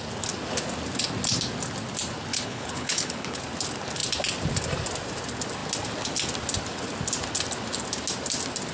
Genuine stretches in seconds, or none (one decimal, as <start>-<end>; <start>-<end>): 0.0-2.3; 3.4-8.7